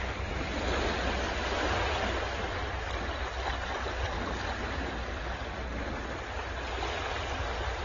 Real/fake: real